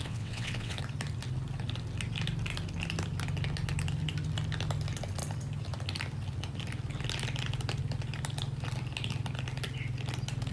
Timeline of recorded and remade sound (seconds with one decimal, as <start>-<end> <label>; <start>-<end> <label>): 0.0-0.8 remade; 0.8-10.5 recorded